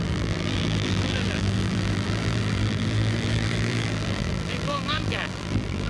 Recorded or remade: remade